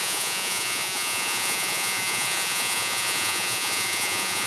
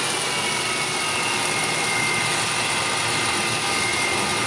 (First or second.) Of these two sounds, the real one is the second